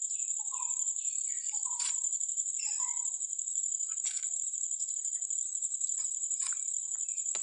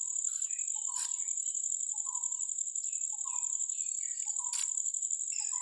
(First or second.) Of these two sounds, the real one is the second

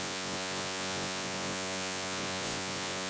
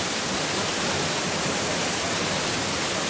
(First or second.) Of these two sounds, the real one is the second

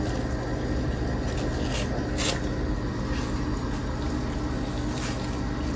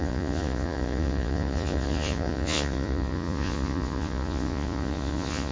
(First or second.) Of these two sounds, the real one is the first